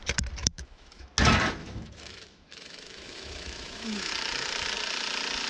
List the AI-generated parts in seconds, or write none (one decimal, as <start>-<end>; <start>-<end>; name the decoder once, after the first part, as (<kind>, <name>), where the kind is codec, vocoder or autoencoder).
0.4-1.1 (autoencoder, DAC-VAE); 1.6-4.1